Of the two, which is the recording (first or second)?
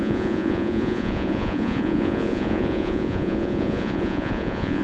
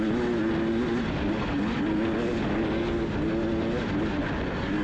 second